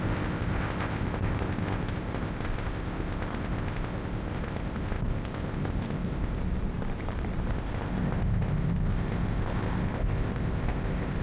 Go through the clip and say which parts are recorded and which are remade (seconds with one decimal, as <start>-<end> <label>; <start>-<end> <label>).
0.0-6.4 remade; 6.4-7.5 recorded; 7.5-11.2 remade